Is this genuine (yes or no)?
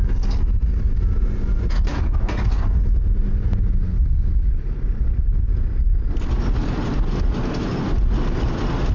yes